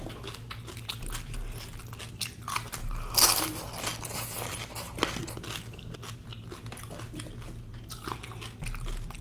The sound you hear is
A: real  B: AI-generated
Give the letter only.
A